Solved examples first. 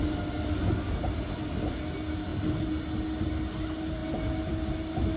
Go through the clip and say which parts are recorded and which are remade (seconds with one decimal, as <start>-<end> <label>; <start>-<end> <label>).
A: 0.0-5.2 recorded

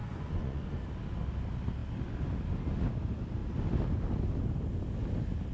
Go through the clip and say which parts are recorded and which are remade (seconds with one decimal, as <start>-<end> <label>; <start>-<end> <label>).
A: 0.0-0.7 remade; 0.7-5.5 recorded

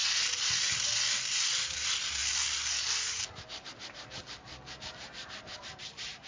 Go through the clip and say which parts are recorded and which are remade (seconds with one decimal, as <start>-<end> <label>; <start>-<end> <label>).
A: 0.0-1.1 recorded; 1.1-6.3 remade